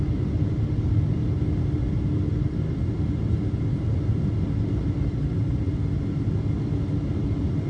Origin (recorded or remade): recorded